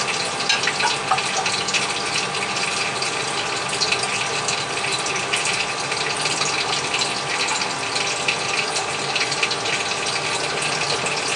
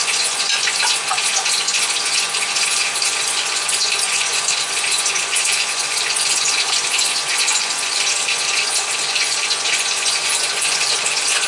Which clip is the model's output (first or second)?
second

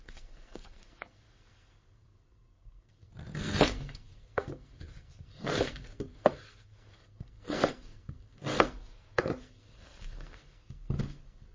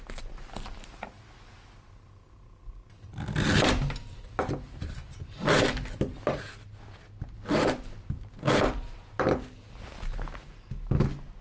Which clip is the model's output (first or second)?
first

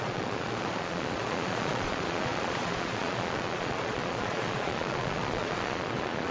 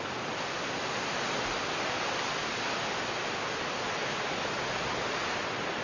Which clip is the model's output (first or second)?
first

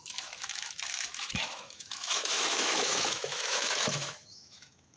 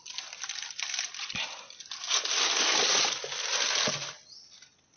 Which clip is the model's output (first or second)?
first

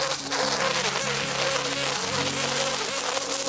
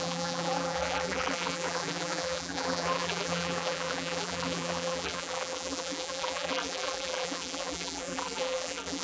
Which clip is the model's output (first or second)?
second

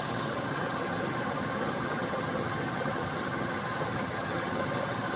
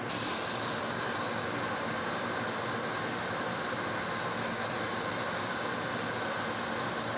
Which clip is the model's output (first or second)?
first